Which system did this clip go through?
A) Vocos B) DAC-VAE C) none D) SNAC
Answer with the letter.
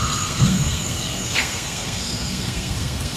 D